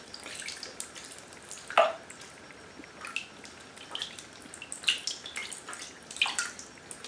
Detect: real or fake real